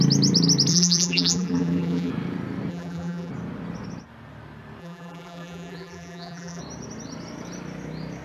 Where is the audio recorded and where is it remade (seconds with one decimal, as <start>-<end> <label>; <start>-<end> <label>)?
0.0-0.7 recorded; 0.7-2.1 remade; 2.1-2.7 recorded; 2.7-3.3 remade; 3.3-4.8 recorded; 4.8-6.6 remade; 6.6-8.2 recorded